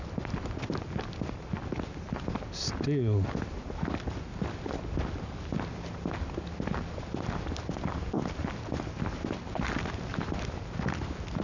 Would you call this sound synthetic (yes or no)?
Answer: no